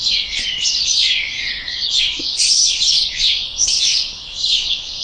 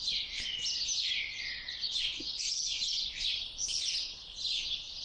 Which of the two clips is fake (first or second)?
first